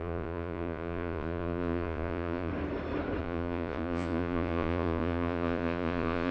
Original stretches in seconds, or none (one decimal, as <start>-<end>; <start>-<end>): 2.5-3.2